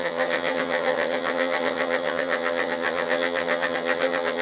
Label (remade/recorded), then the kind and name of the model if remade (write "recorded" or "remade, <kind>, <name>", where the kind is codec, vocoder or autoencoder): remade, vocoder, HiFi-GAN